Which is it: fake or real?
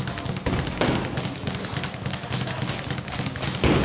real